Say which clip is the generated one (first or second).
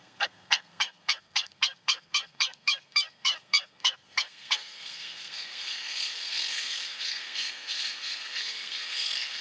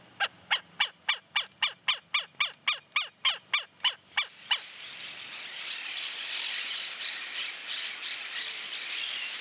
first